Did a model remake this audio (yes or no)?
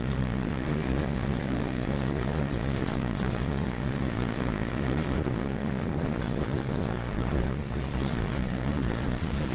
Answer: yes